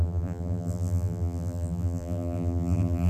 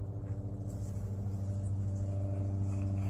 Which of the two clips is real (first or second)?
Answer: second